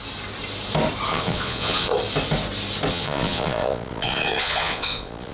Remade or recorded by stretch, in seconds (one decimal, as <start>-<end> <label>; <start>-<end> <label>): 0.0-1.1 recorded; 1.1-1.9 remade; 1.9-2.9 recorded; 2.9-5.3 remade

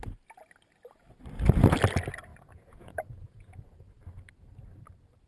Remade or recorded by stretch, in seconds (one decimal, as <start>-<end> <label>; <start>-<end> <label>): 0.0-2.3 recorded; 2.3-4.0 remade; 4.0-5.3 recorded

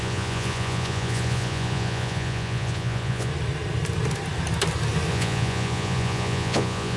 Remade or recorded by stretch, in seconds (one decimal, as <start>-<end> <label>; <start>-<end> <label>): 0.0-3.3 remade; 3.3-5.1 recorded; 5.1-7.0 remade

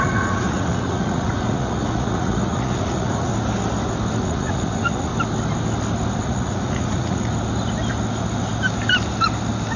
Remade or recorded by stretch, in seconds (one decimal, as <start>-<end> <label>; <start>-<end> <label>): 0.0-3.3 remade; 3.3-4.2 recorded; 4.2-5.1 remade; 5.1-6.2 recorded; 6.2-7.3 remade; 7.3-9.8 recorded

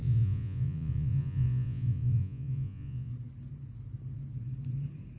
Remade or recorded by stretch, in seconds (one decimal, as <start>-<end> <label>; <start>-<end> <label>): 0.0-3.1 remade; 3.1-5.2 recorded

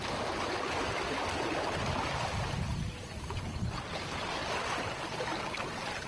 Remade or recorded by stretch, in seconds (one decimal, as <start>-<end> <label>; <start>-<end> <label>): 0.0-6.1 recorded

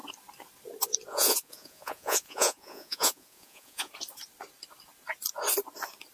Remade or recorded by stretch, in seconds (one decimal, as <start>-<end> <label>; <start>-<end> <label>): 0.0-1.1 recorded; 1.1-3.9 remade; 3.9-6.1 recorded